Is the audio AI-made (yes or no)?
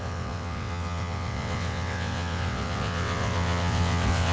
yes